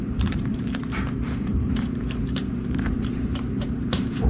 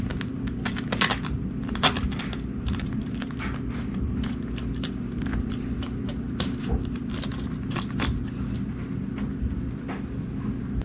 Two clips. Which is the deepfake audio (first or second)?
first